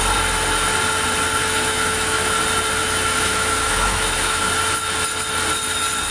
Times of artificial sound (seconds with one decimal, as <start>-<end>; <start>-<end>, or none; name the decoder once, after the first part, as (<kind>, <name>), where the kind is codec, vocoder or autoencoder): 1.4-2.4 (autoencoder, DAC-VAE); 2.8-4.5